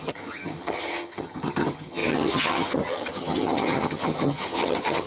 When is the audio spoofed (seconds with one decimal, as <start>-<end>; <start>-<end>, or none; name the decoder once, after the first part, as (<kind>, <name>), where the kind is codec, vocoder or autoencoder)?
0.0-5.1 (vocoder, HiFi-GAN)